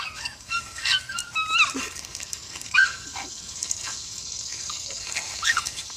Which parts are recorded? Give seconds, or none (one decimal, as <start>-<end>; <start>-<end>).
1.2-1.8